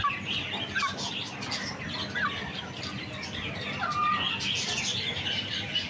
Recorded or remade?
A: recorded